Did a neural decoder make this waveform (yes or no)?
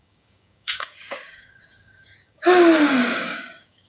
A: yes